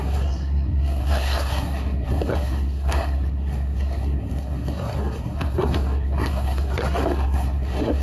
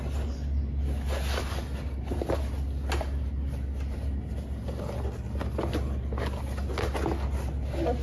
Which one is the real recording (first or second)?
second